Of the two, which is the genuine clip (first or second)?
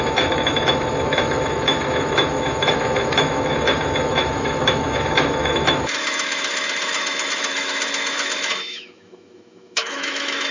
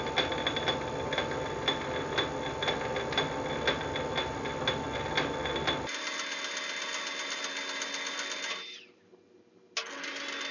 second